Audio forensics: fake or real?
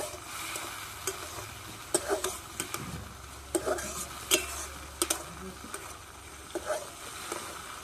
real